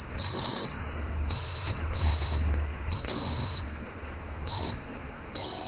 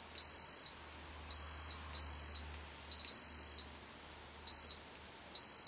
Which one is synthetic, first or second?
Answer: first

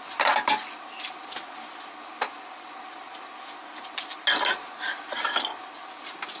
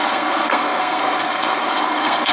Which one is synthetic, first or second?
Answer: second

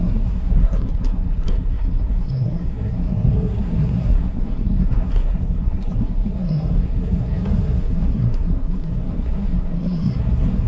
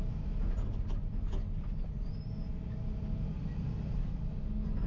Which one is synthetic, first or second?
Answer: first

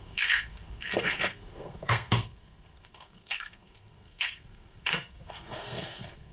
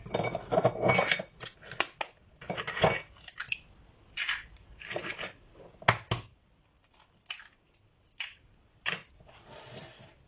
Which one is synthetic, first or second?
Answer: first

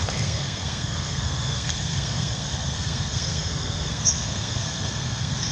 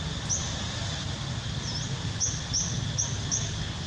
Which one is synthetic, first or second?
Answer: first